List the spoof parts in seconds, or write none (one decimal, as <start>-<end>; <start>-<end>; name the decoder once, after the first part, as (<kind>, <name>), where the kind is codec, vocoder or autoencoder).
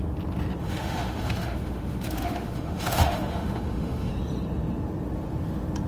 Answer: 0.6-4.1 (autoencoder, DAC-VAE)